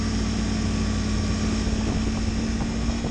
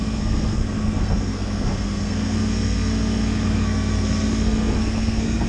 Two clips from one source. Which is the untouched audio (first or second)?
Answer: first